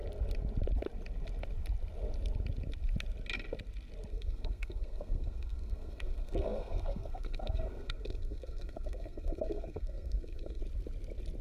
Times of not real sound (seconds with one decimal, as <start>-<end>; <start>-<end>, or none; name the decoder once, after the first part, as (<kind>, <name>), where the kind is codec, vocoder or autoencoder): 4.1-10.6 (codec, SNAC)